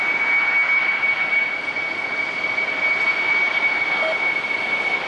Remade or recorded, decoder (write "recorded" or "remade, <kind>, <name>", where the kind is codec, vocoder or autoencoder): recorded